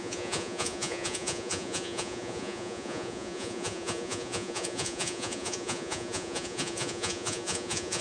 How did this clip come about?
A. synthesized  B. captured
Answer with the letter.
A